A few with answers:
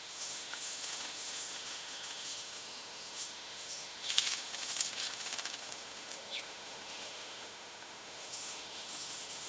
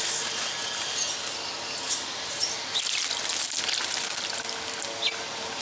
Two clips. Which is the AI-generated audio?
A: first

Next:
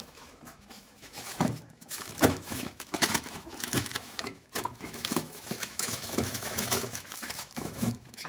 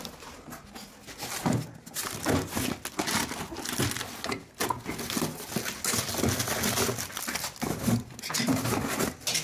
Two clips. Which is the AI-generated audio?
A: first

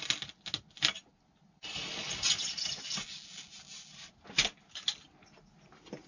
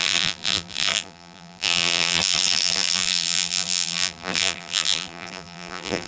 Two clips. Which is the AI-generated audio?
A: second